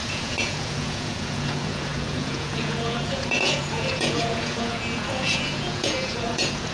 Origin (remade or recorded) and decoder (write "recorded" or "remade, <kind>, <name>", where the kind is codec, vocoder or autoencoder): remade, vocoder, Vocos